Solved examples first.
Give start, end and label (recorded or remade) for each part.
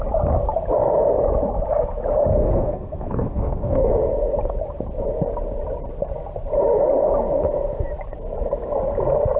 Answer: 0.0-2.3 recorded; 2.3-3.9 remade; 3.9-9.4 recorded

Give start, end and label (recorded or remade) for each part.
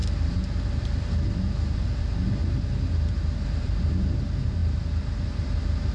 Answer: 0.0-5.9 recorded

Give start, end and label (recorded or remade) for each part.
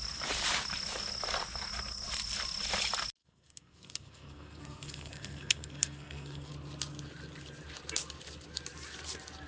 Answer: 0.0-3.2 recorded; 3.2-6.5 remade; 6.5-9.5 recorded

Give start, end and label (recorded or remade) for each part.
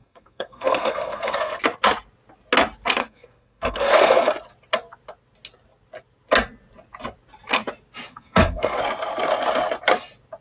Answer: 0.0-1.6 remade; 1.6-3.0 recorded; 3.0-4.3 remade; 4.3-8.1 recorded; 8.1-8.8 remade; 8.8-10.4 recorded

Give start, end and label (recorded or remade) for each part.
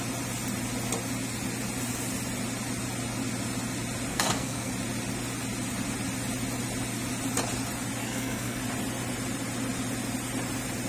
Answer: 0.0-4.1 recorded; 4.1-4.7 remade; 4.7-8.0 recorded; 8.0-8.6 remade; 8.6-10.9 recorded